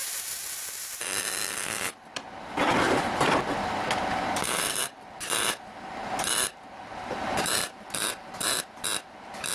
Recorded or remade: remade